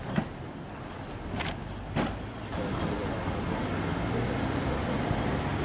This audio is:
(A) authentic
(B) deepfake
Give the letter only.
A